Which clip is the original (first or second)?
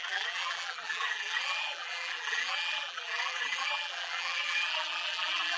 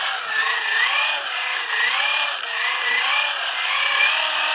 second